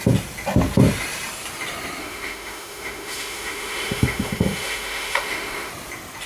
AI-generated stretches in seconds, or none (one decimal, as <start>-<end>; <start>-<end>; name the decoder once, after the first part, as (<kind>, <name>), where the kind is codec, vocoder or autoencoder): 2.0-5.7 (autoencoder, DAC-VAE)